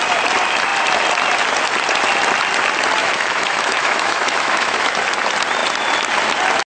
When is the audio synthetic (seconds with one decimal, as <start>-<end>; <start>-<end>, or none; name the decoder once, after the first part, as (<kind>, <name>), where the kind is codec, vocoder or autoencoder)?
3.0-4.9 (autoencoder, DAC-VAE)